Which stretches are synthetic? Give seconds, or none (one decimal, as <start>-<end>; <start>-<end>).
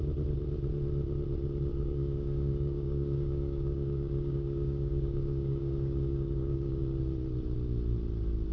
1.7-6.8